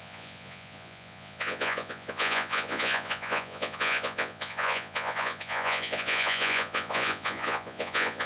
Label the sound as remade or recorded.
remade